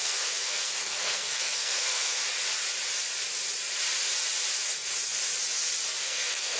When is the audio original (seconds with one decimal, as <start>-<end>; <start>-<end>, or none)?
2.2-6.0